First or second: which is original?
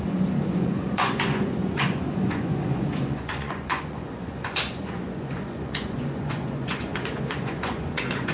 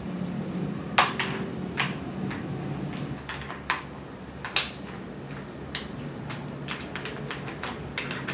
second